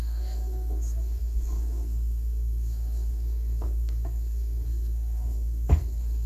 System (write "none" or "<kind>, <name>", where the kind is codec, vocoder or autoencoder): codec, SNAC